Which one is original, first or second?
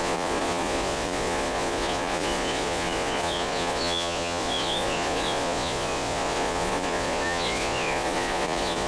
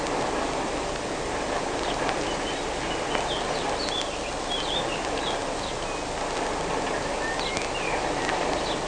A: second